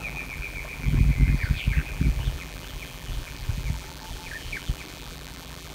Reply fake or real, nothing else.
fake